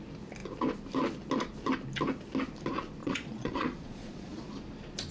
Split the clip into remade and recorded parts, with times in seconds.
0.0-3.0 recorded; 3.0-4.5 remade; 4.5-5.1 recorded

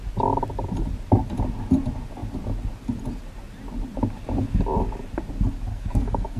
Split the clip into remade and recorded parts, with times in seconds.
0.0-5.7 recorded; 5.7-6.4 remade

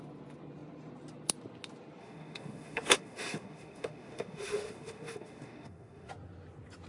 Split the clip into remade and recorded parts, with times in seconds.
0.0-2.0 recorded; 2.0-6.1 remade; 6.1-6.9 recorded

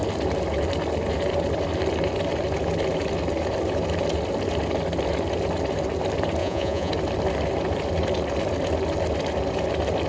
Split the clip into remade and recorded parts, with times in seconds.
0.0-6.4 recorded; 6.4-6.9 remade; 6.9-10.1 recorded

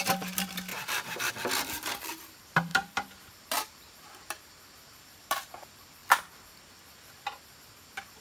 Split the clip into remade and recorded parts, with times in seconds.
0.0-0.7 recorded; 0.7-1.3 remade; 1.3-2.7 recorded; 2.7-5.5 remade; 5.5-8.2 recorded

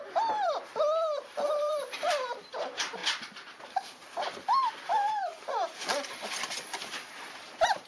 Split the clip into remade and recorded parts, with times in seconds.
0.0-0.7 remade; 0.7-1.6 recorded; 1.6-3.0 remade; 3.0-5.5 recorded; 5.5-7.9 remade

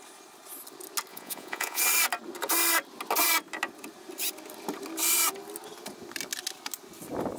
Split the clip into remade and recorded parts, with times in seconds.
0.0-1.1 recorded; 1.1-1.8 remade; 1.8-7.4 recorded